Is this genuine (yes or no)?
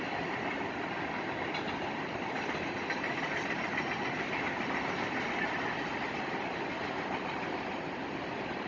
yes